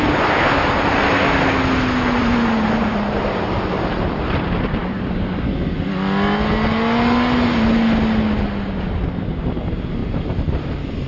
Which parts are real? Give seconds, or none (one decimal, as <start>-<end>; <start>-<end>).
0.0-2.2; 3.4-10.0; 10.6-11.1

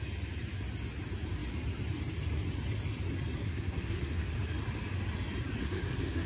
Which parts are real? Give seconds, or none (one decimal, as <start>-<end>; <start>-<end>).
0.0-3.4; 4.3-5.6

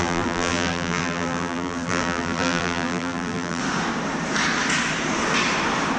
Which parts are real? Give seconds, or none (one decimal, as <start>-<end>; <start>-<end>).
3.6-6.0

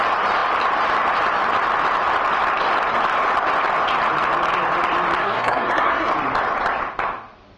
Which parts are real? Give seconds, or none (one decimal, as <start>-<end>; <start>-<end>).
0.0-5.2; 6.1-7.6

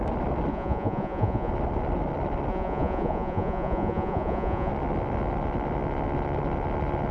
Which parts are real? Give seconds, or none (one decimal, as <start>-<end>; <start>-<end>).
0.0-0.5; 1.5-2.5; 4.7-7.1

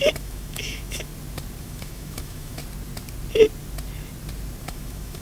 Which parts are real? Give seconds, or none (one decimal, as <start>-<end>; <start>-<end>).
1.1-1.6; 2.6-4.6

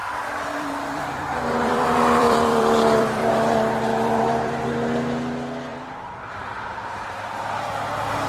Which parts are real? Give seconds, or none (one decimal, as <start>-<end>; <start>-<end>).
3.3-3.9; 4.7-5.7; 7.4-8.3